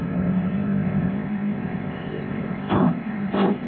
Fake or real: fake